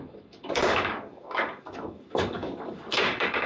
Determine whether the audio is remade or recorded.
remade